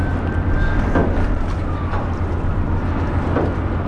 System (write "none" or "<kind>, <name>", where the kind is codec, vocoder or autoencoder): none